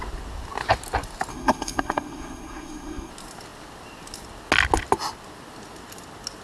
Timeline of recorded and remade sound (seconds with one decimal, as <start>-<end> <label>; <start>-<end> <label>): 0.0-1.3 recorded; 1.3-3.1 remade; 3.1-6.4 recorded